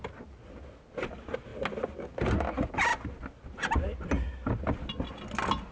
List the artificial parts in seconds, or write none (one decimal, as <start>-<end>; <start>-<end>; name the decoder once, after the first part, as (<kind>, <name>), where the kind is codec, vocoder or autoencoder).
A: none